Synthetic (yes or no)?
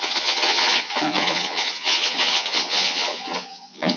yes